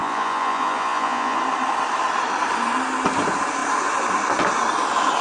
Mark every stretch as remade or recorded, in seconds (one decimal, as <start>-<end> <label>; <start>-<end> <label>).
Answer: 0.0-1.4 remade; 1.4-5.2 recorded